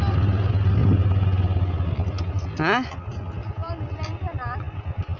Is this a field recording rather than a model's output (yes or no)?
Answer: yes